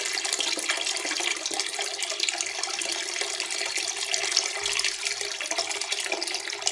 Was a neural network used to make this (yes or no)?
no